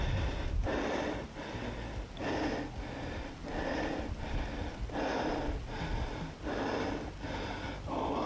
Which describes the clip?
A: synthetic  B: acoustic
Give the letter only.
B